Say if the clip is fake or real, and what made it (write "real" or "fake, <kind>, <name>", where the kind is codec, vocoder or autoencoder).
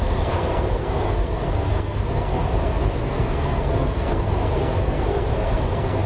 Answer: fake, codec, SNAC